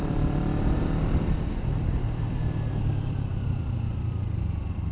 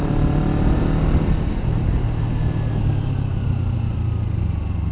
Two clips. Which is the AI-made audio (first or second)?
first